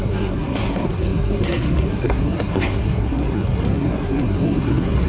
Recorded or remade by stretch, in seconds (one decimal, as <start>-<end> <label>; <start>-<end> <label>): 0.0-5.1 remade